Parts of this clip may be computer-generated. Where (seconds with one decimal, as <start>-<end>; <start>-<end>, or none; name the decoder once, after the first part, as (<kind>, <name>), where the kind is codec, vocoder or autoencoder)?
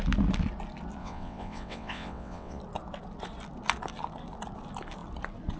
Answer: 1.0-2.6 (vocoder, WaveNeXt)